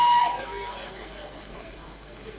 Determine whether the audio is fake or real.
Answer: fake